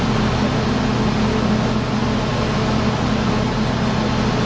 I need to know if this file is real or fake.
real